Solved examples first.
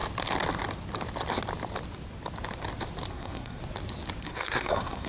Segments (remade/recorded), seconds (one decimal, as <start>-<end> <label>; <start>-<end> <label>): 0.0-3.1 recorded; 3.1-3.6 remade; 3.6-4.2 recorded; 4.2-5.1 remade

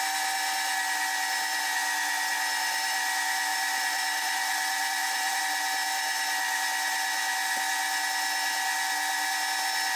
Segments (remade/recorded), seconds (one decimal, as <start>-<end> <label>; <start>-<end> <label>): 0.0-3.5 recorded; 3.5-5.4 remade; 5.4-10.0 recorded

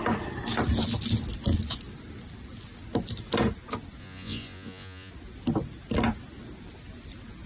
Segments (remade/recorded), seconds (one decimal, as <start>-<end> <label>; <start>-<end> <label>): 0.0-4.0 recorded; 4.0-5.1 remade; 5.1-7.5 recorded

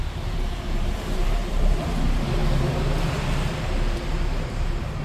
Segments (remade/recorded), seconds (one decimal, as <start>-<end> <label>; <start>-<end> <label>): 0.0-2.4 remade; 2.4-5.0 recorded

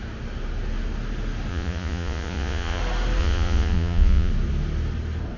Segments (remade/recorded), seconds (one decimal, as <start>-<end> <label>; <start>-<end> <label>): 0.0-1.5 recorded; 1.5-2.8 remade; 2.8-3.2 recorded; 3.2-4.3 remade; 4.3-5.4 recorded